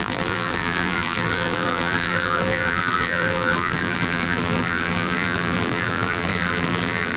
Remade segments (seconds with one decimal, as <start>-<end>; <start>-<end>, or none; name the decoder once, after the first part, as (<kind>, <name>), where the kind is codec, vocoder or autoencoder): 0.0-7.2 (vocoder, BigVGAN v2)

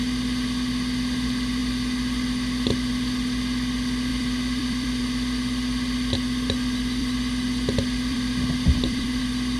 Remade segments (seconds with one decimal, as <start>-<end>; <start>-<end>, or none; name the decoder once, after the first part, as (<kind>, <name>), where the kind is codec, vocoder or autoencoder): 4.1-5.0 (vocoder, BigVGAN v2); 7.0-9.2

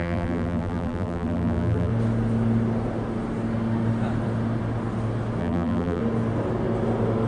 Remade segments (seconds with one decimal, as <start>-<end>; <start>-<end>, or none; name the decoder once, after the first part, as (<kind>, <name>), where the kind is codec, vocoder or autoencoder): 0.0-1.9 (vocoder, BigVGAN v2); 5.4-6.0